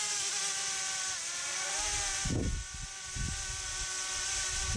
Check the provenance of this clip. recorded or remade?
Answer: recorded